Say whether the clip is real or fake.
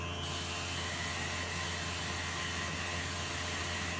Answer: real